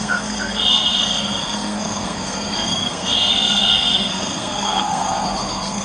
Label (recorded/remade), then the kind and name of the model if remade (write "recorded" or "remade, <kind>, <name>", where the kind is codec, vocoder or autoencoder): remade, codec, SNAC